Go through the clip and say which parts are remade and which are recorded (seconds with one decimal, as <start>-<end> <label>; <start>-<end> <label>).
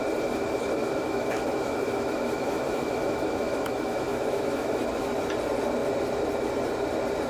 0.0-0.8 recorded; 0.8-5.2 remade; 5.2-7.3 recorded